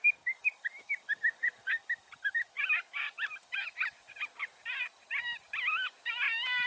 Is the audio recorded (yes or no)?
yes